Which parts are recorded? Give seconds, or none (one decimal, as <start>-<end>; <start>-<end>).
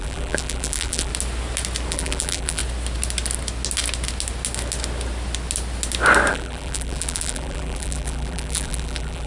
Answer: 1.1-1.9; 2.6-6.3